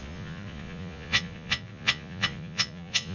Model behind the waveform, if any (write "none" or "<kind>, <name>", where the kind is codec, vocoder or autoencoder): vocoder, Vocos